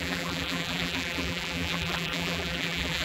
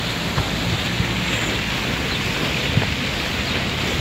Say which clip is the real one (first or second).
second